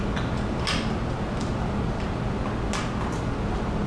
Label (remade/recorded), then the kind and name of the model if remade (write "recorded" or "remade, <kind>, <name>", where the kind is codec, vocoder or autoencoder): recorded